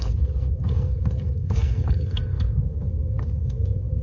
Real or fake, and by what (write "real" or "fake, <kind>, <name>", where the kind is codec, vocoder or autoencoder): fake, codec, SNAC